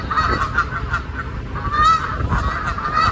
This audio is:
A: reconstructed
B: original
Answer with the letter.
B